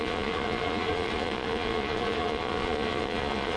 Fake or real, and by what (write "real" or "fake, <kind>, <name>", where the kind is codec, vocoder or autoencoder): fake, vocoder, Vocos